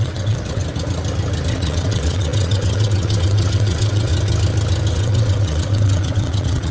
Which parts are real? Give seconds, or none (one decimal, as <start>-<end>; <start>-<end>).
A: 0.6-1.5; 4.1-4.9